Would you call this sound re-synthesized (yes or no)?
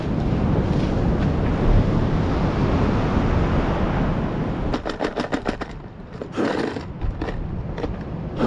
no